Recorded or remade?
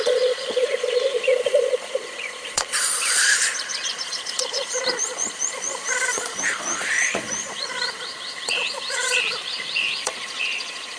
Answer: remade